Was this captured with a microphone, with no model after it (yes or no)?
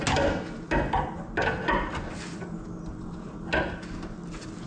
yes